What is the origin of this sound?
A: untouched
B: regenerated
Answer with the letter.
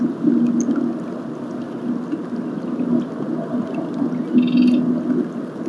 A